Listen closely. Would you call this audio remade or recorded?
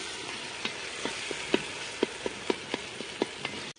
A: recorded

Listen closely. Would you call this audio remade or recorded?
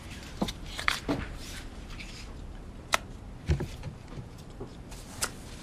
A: remade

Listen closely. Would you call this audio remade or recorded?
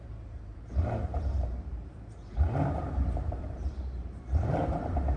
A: remade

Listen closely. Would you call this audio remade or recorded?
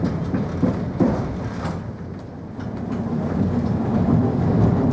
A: recorded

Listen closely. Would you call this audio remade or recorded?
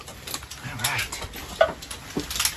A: recorded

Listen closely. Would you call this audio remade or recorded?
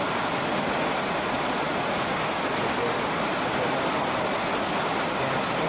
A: recorded